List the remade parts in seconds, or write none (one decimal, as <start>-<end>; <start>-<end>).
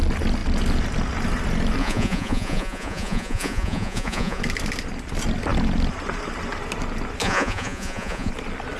1.8-4.4; 7.2-8.3